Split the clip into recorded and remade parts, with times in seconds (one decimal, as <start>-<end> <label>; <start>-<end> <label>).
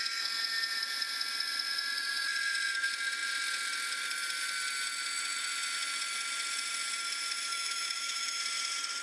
0.0-7.5 recorded; 7.5-8.4 remade; 8.4-9.0 recorded